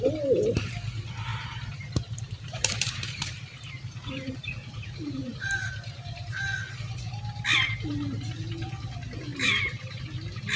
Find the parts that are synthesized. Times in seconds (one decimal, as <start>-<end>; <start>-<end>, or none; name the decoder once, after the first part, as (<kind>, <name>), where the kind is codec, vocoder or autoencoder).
1.3-4.5 (vocoder, BigVGAN v2); 5.2-6.3; 9.3-10.0